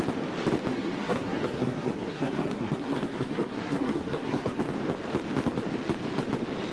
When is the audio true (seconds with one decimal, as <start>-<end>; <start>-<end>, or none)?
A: 0.0-0.7; 4.6-6.7